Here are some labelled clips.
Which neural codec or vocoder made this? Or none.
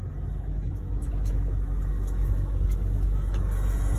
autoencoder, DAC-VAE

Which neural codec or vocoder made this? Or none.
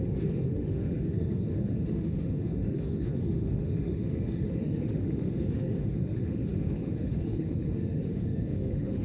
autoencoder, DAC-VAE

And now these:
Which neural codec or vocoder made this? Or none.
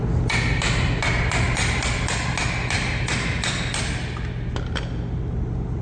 none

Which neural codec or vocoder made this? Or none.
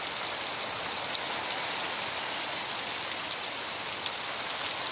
none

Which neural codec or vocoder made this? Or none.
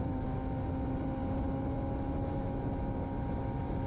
none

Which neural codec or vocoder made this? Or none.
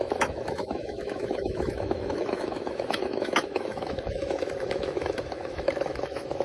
autoencoder, DAC-VAE